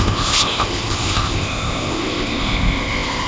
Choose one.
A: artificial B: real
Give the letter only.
A